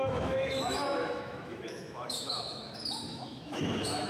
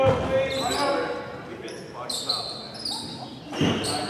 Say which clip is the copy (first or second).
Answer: first